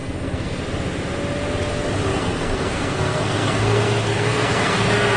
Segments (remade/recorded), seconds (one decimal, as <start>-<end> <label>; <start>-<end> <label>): 0.0-0.6 remade; 0.6-2.1 recorded; 2.1-5.2 remade